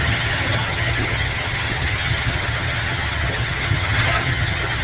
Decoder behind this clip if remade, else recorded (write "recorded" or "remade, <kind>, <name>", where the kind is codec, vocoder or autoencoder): remade, vocoder, HiFi-GAN